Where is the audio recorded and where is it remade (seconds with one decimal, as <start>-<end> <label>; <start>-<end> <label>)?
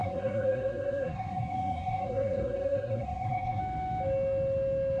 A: 0.0-3.6 remade; 3.6-5.0 recorded